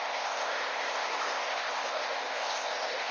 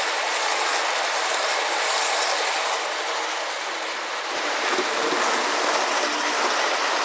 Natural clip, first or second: second